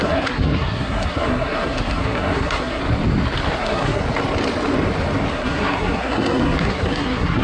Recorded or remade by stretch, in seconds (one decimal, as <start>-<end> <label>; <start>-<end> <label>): 0.0-2.8 remade; 2.8-3.6 recorded; 3.6-4.0 remade; 4.0-5.3 recorded; 5.3-7.4 remade